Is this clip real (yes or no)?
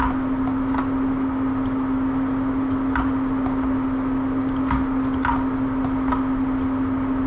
yes